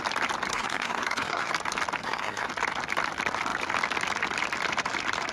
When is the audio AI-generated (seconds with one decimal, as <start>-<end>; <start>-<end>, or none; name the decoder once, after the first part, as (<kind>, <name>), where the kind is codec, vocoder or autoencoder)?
0.5-1.5 (codec, SNAC); 2.0-2.5